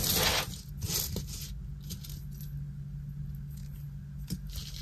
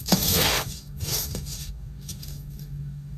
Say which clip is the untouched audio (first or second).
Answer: first